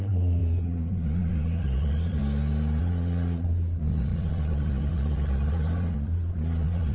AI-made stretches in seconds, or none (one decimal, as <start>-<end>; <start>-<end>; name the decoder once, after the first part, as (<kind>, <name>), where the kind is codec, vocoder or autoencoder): 0.0-2.2 (vocoder, Vocos); 2.8-6.9